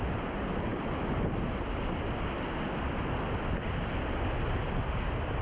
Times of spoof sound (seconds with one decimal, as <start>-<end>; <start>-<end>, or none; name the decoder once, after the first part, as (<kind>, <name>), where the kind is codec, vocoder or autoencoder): none